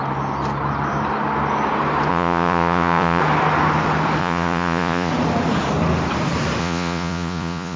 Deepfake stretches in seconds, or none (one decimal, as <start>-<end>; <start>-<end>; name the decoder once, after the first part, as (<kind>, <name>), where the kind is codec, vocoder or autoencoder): 2.1-3.2 (vocoder, Vocos); 4.2-5.1; 6.6-7.8